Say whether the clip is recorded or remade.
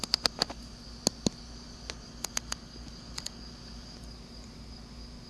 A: recorded